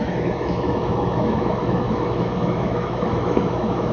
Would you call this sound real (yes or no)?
no